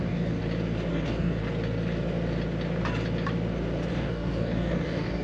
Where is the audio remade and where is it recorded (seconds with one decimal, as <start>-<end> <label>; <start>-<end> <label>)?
0.0-0.4 remade; 0.4-0.9 recorded; 0.9-1.4 remade; 1.4-3.9 recorded; 3.9-5.2 remade